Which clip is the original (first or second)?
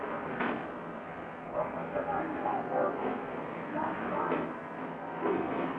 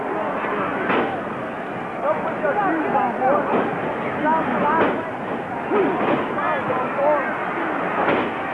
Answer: second